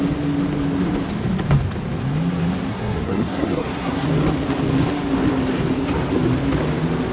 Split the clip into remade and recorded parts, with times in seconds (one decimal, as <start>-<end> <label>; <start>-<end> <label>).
0.0-2.7 recorded; 2.7-4.1 remade; 4.1-7.1 recorded